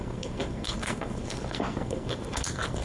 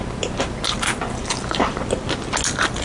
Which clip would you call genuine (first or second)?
second